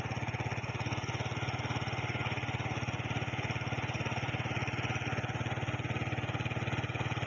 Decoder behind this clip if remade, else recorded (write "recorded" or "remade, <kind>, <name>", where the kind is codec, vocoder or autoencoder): recorded